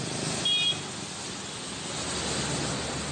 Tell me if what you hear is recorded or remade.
recorded